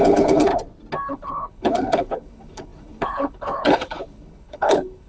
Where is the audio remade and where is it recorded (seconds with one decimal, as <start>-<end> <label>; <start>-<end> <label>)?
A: 0.0-0.5 remade; 0.5-1.1 recorded; 1.1-5.1 remade